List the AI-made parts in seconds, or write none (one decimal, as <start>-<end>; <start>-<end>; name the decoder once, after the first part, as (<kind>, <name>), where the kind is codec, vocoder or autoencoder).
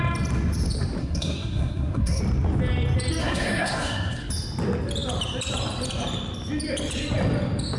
1.0-2.2 (codec, SNAC); 3.2-4.3